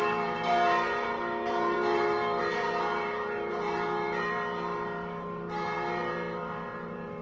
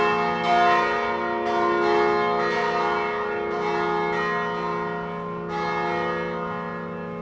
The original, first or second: second